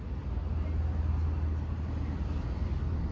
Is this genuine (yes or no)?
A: yes